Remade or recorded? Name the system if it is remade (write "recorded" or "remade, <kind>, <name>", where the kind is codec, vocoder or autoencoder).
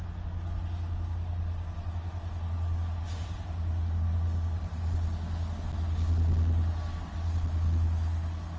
recorded